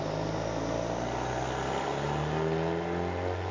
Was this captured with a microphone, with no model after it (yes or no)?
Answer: yes